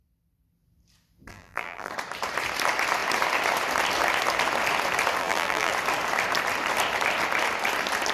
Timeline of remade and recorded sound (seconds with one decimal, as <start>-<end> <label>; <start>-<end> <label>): 0.0-1.3 recorded; 1.3-1.9 remade; 1.9-5.2 recorded; 5.2-5.7 remade; 5.7-8.1 recorded